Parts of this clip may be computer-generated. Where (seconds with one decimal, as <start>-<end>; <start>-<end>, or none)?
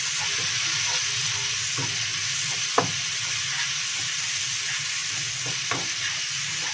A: none